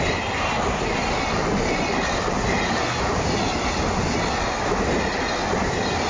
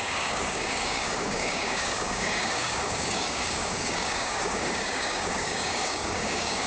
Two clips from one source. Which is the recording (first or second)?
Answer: first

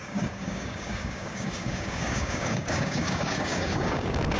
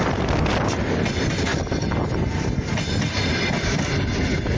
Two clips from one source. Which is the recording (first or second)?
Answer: second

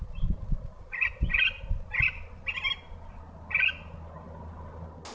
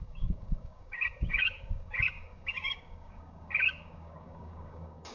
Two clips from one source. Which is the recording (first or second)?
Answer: first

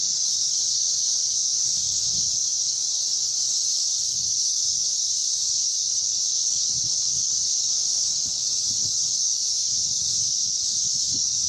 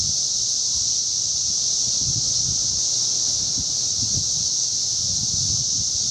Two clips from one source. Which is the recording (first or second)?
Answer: second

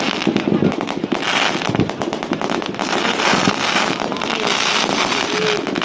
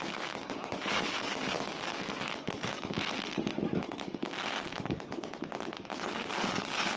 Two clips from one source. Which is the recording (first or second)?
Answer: first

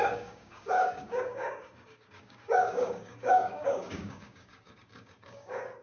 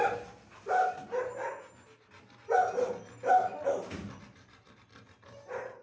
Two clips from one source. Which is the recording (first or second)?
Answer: second